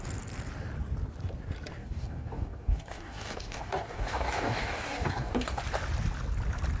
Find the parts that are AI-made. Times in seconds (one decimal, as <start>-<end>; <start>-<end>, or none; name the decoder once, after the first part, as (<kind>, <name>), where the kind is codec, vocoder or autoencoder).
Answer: 1.8-5.6 (codec, DAC)